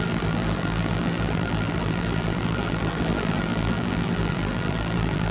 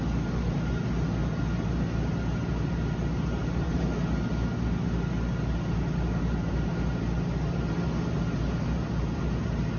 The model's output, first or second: first